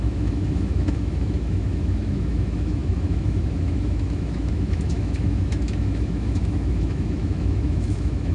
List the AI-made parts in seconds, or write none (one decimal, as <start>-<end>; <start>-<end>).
0.0-8.3